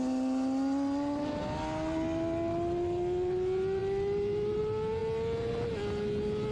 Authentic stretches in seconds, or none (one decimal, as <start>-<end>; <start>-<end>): 0.0-6.5